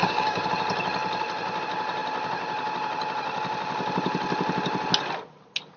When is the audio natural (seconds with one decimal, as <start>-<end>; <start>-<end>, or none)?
0.5-5.8